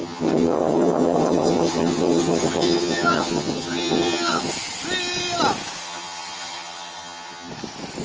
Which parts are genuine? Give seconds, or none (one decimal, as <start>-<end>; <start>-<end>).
4.5-5.8; 7.5-8.0